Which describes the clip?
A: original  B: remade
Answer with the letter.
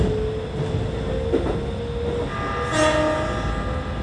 A